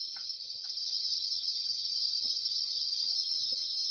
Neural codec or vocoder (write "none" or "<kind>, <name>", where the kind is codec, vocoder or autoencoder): vocoder, HiFi-GAN